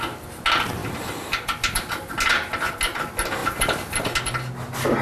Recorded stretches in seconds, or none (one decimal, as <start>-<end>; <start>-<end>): 0.0-5.0